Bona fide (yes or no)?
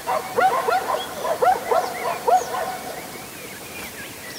no